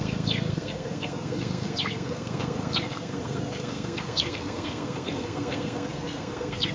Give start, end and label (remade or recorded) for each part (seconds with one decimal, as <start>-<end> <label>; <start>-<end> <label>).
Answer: 0.0-6.7 remade